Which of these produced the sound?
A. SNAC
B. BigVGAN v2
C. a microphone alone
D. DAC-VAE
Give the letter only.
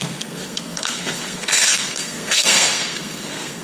A